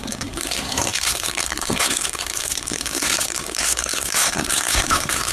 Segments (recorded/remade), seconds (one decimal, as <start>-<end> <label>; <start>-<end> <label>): 0.0-5.3 remade